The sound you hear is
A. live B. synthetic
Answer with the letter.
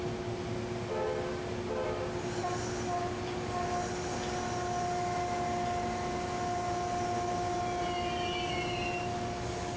A